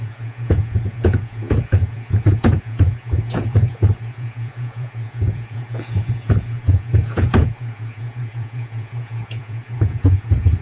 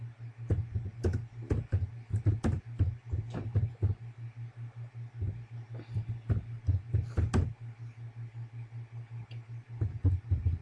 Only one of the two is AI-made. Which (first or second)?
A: first